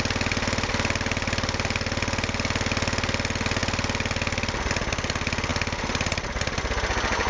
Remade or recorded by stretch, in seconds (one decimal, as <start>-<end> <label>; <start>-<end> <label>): 0.0-7.3 recorded

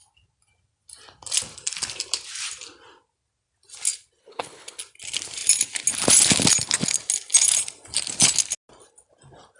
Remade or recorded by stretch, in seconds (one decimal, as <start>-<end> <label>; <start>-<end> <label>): 0.0-4.2 recorded; 4.2-4.8 remade; 4.8-9.6 recorded

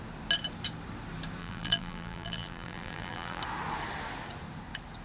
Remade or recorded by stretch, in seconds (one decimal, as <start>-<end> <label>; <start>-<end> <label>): 0.0-1.4 recorded; 1.4-3.4 remade; 3.4-5.0 recorded

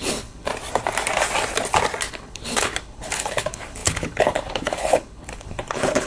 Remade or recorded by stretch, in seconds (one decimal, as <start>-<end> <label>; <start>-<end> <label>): 0.0-0.5 remade; 0.5-2.1 recorded; 2.1-6.1 remade

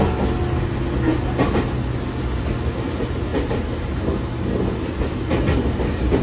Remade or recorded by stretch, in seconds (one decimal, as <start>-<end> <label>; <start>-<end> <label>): 0.0-6.2 recorded